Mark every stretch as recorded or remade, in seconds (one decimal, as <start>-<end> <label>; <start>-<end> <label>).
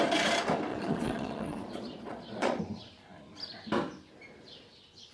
0.0-0.7 recorded; 0.7-2.6 remade; 2.6-5.1 recorded